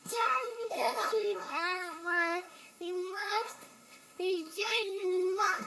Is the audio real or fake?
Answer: fake